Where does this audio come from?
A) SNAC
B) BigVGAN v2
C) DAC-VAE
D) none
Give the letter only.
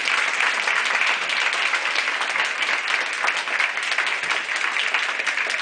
D